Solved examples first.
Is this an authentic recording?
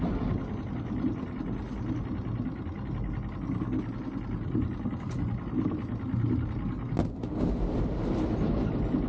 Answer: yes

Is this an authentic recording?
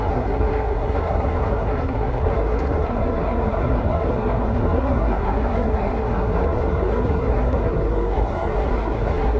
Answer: no